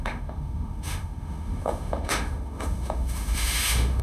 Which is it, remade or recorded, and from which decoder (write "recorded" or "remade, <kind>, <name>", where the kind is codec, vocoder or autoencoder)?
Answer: remade, autoencoder, DAC-VAE